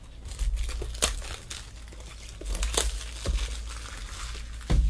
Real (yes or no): yes